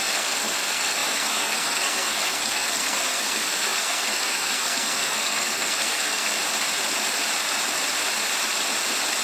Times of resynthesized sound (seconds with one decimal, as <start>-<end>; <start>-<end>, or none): 0.0-6.4